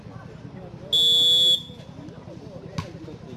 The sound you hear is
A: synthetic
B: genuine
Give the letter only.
B